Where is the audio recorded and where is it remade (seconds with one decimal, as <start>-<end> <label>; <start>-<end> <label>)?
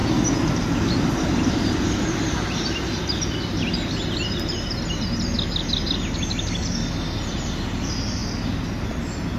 0.0-9.4 recorded